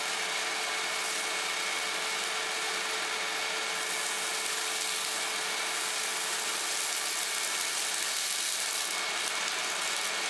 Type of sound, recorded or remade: recorded